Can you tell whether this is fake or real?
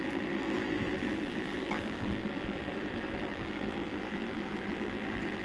fake